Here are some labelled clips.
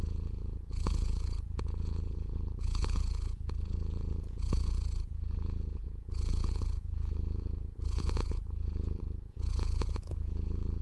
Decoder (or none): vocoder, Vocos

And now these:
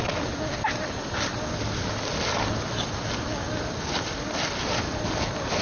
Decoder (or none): none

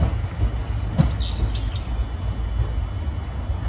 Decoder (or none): none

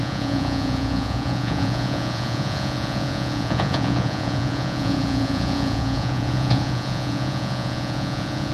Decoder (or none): vocoder, Vocos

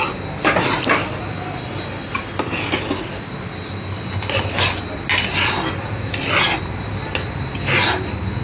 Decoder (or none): none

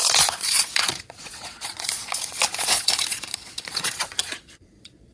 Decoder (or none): vocoder, Vocos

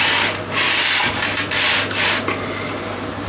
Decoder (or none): none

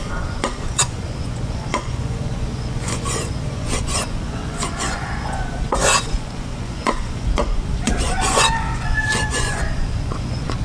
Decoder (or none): vocoder, Vocos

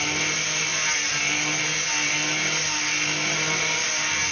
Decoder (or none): none